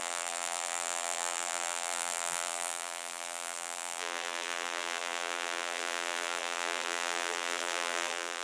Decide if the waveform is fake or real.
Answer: fake